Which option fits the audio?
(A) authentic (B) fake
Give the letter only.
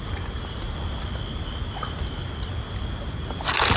A